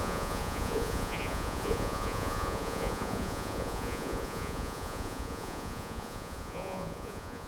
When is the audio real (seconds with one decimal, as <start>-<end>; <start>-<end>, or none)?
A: none